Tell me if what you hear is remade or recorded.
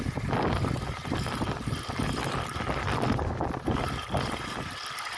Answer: recorded